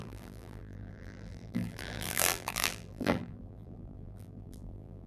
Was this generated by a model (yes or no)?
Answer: yes